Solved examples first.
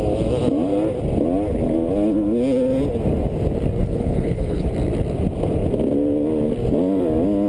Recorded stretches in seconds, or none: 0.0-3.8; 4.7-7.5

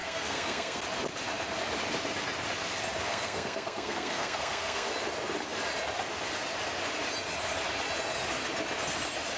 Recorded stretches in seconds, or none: 0.8-3.1; 4.9-9.4